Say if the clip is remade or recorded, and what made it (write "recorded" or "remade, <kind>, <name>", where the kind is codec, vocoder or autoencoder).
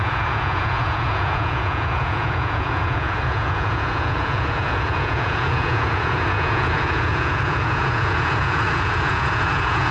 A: remade, vocoder, Vocos